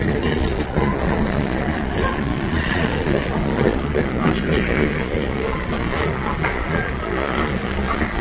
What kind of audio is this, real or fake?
fake